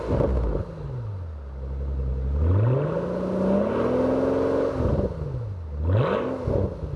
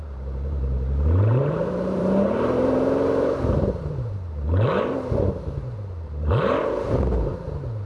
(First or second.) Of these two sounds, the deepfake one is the second